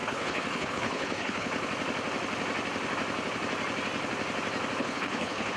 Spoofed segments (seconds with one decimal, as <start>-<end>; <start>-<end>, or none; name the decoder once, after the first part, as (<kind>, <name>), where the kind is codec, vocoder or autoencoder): 0.0-1.5 (codec, HILCodec); 4.8-5.6